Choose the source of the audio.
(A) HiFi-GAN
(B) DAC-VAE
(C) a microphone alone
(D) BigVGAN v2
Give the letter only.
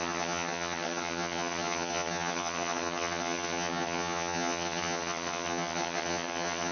A